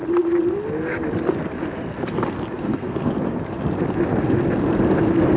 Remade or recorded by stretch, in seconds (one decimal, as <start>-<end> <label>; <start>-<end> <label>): 0.0-2.6 recorded; 2.6-3.1 remade; 3.1-5.4 recorded